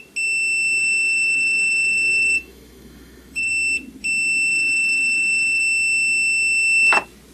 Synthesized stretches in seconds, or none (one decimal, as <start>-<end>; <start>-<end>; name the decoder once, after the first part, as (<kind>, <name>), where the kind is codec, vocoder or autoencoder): 0.8-3.5 (autoencoder, DAC-VAE); 4.5-5.6